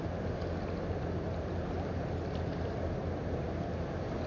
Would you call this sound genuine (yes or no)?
yes